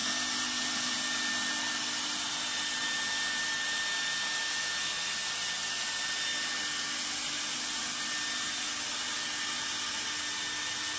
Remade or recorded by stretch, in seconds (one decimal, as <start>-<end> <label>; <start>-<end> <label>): 0.0-11.0 recorded